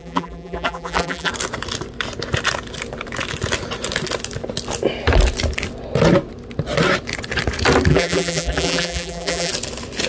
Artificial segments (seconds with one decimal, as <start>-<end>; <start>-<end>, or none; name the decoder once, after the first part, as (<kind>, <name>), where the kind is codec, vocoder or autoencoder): 0.0-1.3 (vocoder, BigVGAN v2); 7.9-9.5